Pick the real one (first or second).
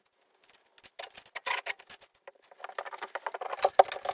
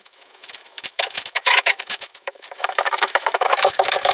first